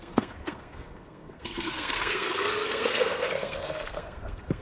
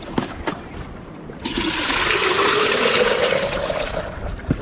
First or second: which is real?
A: second